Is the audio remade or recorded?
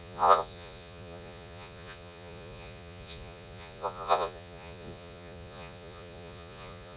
remade